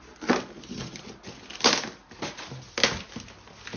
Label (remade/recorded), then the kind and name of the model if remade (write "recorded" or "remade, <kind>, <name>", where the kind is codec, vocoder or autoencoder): recorded